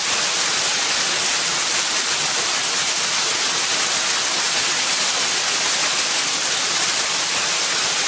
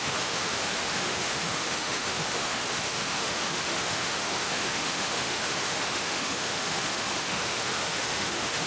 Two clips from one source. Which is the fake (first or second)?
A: second